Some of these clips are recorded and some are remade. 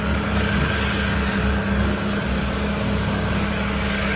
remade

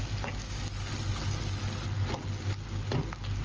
recorded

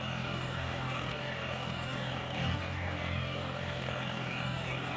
remade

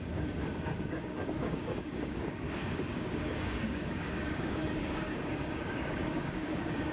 remade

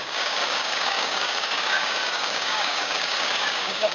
remade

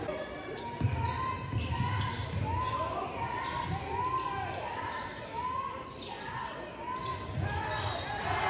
recorded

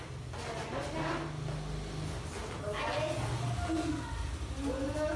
recorded